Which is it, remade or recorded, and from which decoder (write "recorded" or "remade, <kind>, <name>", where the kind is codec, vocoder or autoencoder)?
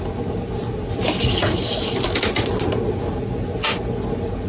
recorded